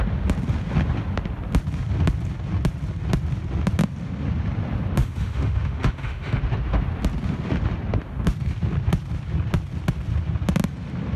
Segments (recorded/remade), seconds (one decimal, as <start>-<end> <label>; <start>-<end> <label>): 0.0-5.0 recorded; 5.0-6.4 remade; 6.4-11.2 recorded